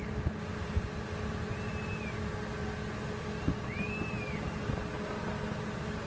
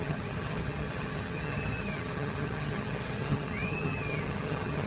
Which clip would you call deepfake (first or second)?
second